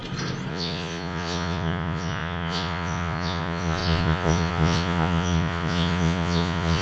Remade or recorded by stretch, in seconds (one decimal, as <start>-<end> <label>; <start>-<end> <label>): 0.0-0.5 recorded; 0.5-6.8 remade